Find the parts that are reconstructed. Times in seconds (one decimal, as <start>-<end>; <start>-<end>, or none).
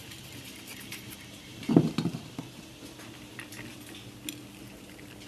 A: none